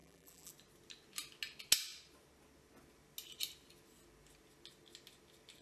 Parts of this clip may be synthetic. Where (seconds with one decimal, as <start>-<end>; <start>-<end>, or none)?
0.0-0.5